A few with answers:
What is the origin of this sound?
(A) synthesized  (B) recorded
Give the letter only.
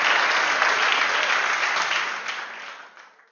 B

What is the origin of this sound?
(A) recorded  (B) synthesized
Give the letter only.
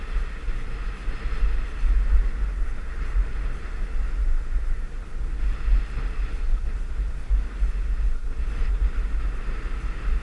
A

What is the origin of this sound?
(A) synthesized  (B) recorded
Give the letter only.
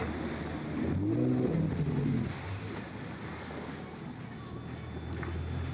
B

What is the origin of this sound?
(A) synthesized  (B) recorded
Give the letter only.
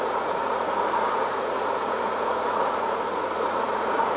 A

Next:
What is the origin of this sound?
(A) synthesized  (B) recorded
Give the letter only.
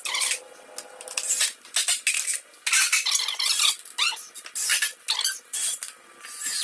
B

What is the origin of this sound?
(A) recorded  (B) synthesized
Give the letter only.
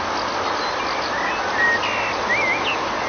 A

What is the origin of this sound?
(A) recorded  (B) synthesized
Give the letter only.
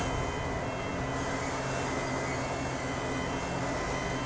A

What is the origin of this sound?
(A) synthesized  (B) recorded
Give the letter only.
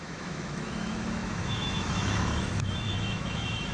A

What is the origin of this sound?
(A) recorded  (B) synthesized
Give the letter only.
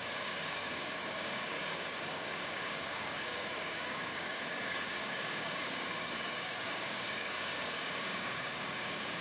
B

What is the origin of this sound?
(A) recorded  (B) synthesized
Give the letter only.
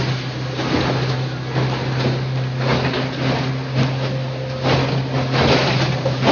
A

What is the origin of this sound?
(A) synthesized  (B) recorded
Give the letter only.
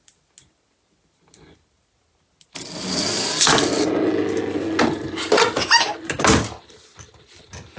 B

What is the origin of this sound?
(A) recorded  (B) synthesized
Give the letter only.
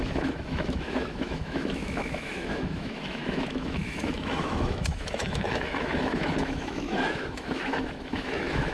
B